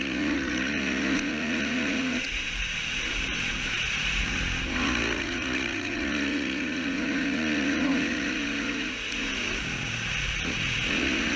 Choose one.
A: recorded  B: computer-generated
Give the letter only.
B